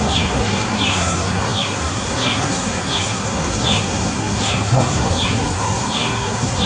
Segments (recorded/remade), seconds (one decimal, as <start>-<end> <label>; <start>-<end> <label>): 0.0-6.7 remade